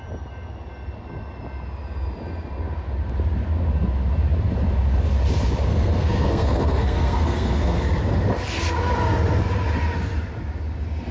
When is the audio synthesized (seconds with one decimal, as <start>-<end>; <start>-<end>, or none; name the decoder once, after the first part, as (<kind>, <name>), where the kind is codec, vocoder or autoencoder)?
5.7-7.8 (codec, SNAC)